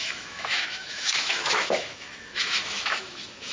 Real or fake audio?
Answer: fake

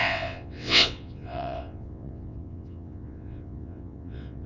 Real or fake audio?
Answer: fake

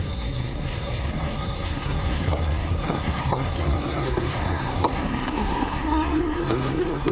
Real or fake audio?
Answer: fake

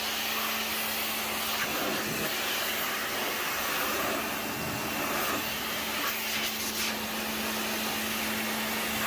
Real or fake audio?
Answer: real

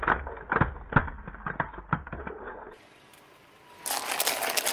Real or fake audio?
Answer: real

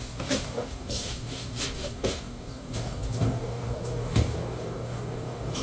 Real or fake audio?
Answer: fake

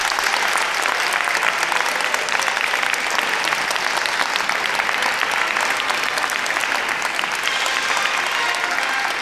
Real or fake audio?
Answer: real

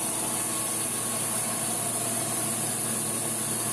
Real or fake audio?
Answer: real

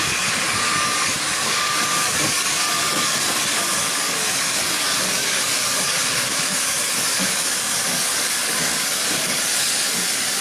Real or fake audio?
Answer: fake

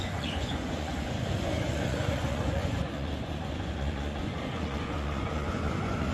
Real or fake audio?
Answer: fake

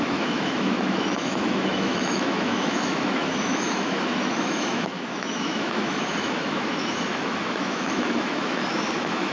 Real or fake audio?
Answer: fake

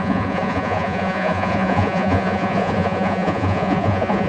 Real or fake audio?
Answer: fake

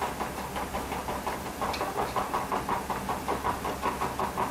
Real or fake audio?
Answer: real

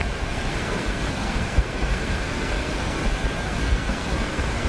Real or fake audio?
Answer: fake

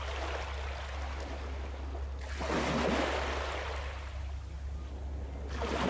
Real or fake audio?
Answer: real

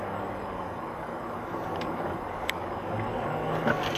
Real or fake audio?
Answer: fake